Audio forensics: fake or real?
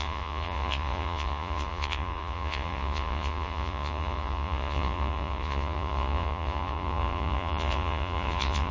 fake